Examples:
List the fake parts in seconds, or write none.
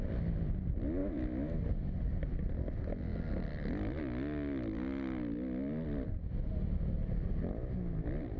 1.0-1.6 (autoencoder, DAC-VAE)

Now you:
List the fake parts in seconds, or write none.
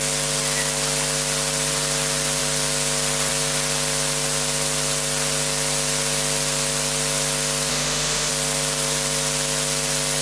7.7-8.3 (autoencoder, DAC-VAE)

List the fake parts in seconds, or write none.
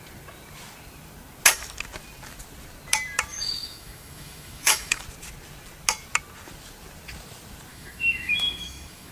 3.3-5.0 (autoencoder, DAC-VAE); 7.7-9.1